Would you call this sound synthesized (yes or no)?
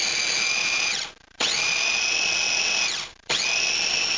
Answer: no